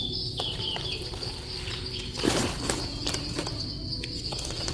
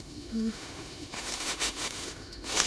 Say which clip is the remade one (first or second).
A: second